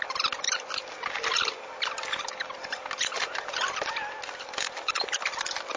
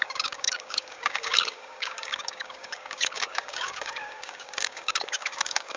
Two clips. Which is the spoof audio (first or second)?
second